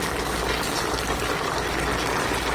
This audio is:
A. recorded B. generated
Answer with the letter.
A